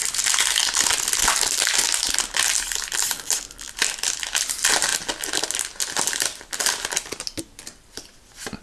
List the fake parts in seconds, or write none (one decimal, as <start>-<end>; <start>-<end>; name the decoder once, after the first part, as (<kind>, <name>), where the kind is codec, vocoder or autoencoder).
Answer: none